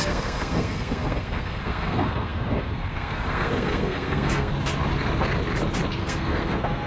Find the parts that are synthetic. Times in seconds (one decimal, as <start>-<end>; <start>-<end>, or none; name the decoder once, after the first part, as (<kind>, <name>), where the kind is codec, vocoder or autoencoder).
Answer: 0.0-4.5 (codec, SNAC); 6.0-6.9